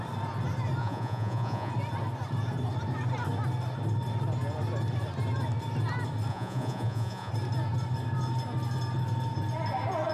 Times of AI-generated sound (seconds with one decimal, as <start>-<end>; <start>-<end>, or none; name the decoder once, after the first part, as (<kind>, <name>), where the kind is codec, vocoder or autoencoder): 0.8-1.7 (vocoder, Vocos); 6.3-7.3